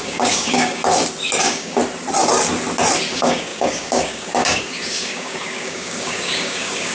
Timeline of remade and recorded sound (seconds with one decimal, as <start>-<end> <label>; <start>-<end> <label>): 0.0-0.8 remade; 0.8-1.4 recorded; 1.4-1.8 remade; 1.8-3.1 recorded; 3.1-6.9 remade